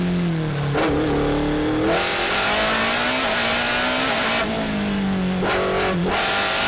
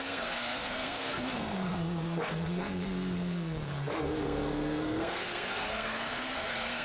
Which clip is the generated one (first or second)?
second